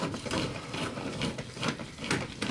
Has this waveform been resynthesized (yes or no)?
no